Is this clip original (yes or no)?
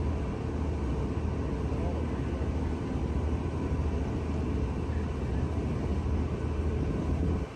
yes